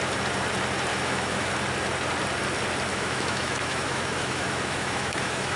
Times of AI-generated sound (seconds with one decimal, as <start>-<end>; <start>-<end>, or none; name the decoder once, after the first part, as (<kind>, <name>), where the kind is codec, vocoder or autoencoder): 0.9-1.5 (autoencoder, DAC-VAE); 2.9-5.6